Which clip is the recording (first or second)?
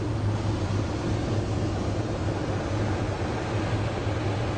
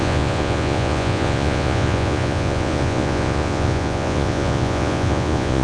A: first